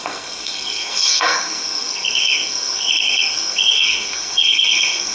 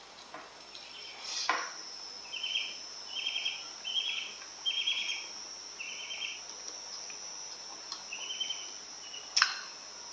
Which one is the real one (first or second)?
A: second